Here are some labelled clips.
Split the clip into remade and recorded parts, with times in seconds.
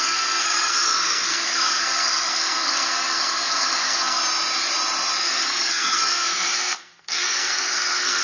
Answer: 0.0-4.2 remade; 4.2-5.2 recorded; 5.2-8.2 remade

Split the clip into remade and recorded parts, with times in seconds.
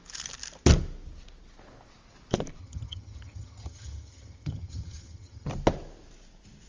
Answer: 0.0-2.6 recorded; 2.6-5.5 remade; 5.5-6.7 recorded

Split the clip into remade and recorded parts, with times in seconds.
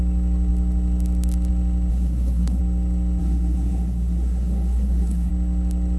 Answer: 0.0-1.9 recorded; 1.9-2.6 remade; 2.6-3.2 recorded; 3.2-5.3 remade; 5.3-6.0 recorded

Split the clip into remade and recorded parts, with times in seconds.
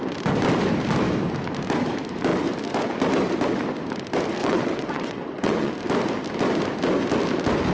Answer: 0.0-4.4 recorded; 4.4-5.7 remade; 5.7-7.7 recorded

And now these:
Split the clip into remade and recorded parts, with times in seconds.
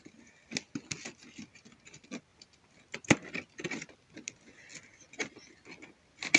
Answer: 0.0-6.4 recorded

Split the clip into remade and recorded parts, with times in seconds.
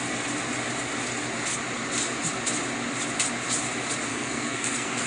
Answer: 0.0-4.1 recorded; 4.1-5.1 remade